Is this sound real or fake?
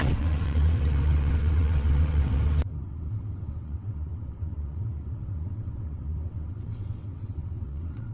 fake